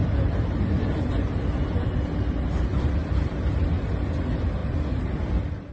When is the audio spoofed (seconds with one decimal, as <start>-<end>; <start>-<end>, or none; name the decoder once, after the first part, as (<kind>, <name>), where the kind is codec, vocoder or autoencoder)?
0.0-1.0 (vocoder, BigVGAN v2); 3.0-3.6; 4.6-5.7